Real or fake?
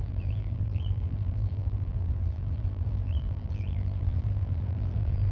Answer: fake